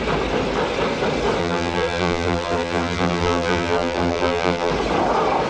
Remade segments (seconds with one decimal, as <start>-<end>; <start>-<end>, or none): 1.4-4.7